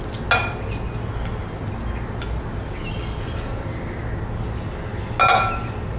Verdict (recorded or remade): recorded